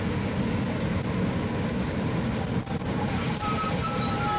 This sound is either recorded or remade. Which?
recorded